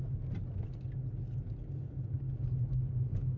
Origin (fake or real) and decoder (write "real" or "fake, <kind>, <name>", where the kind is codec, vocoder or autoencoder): real